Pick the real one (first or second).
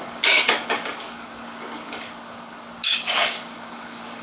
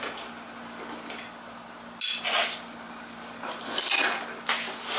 second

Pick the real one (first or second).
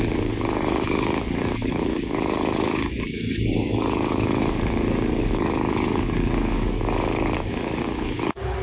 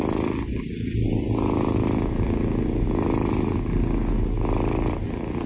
second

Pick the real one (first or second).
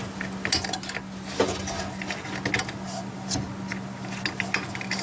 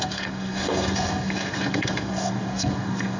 first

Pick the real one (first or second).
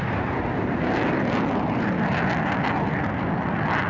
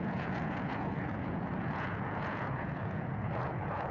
first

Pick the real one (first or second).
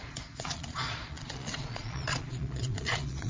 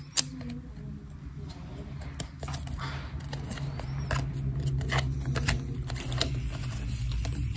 second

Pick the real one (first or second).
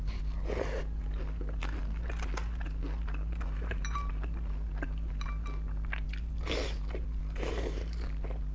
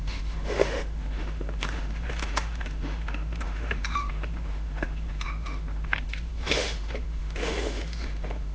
first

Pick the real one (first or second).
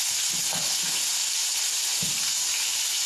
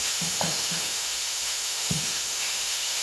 first